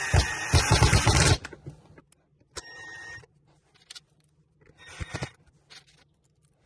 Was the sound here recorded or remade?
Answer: recorded